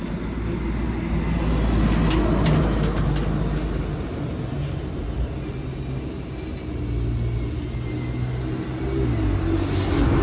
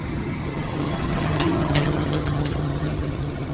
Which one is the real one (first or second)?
first